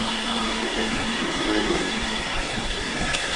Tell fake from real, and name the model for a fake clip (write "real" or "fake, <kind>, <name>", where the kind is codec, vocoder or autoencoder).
fake, codec, SNAC